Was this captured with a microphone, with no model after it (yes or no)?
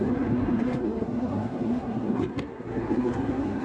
no